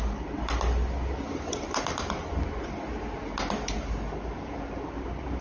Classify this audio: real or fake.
real